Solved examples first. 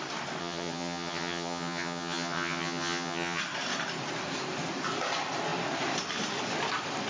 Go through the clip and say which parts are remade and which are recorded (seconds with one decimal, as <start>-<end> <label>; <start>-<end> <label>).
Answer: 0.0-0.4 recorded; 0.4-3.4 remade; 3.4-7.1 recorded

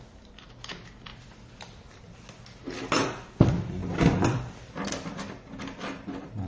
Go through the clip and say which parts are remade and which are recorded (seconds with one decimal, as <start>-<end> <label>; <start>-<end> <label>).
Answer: 0.0-1.1 recorded; 1.1-2.1 remade; 2.1-3.8 recorded; 3.8-6.5 remade

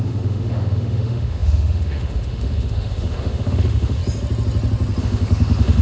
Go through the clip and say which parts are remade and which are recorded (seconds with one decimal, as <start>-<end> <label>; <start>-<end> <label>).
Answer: 0.0-4.0 remade; 4.0-5.0 recorded; 5.0-5.8 remade